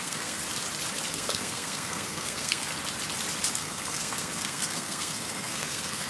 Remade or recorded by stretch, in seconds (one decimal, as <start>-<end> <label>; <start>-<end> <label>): 0.0-0.4 remade; 0.4-1.1 recorded; 1.1-2.7 remade; 2.7-3.5 recorded; 3.5-6.1 remade